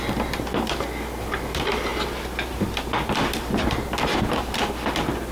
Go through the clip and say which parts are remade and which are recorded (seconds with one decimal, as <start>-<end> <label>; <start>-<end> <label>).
0.0-1.9 remade; 1.9-2.5 recorded; 2.5-5.3 remade